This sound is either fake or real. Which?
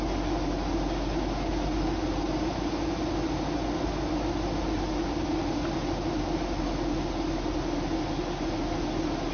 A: real